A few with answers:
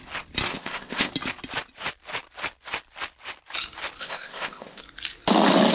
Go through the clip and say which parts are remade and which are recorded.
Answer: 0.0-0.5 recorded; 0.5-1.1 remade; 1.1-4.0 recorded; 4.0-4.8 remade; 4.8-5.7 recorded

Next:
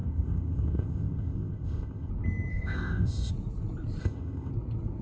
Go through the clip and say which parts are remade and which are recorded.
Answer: 0.0-2.1 remade; 2.1-2.5 recorded; 2.5-3.3 remade; 3.3-4.0 recorded; 4.0-4.5 remade; 4.5-5.0 recorded

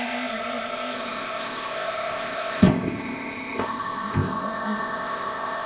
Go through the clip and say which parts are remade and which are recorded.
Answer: 0.0-5.7 remade

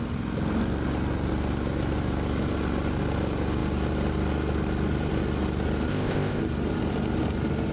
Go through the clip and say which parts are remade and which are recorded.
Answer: 0.0-5.9 recorded; 5.9-6.4 remade; 6.4-7.7 recorded

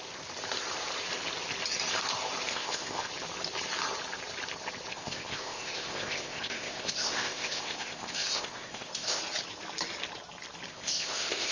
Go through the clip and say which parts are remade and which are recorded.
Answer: 0.0-2.5 recorded; 2.5-3.1 remade; 3.1-4.9 recorded; 4.9-9.2 remade; 9.2-10.7 recorded; 10.7-11.5 remade